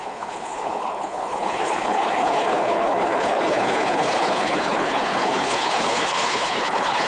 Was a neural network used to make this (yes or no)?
yes